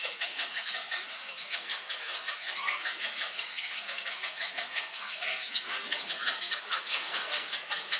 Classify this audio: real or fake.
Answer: fake